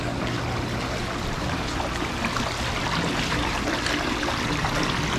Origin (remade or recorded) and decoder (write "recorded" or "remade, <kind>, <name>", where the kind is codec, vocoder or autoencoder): recorded